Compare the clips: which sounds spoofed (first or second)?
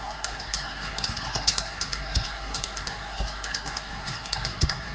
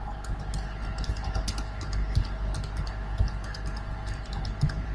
first